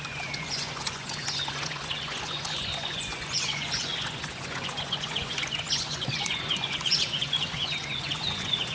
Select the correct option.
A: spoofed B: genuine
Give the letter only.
A